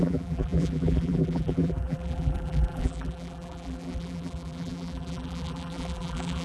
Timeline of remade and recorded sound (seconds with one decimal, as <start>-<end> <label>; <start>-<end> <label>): 0.0-6.4 remade